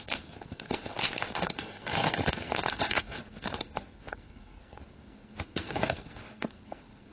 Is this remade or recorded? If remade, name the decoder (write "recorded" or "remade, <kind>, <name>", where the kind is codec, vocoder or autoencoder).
remade, codec, SNAC